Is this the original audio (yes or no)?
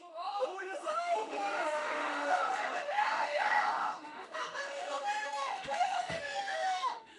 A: no